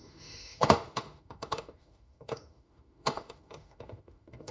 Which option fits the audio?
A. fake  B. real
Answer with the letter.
A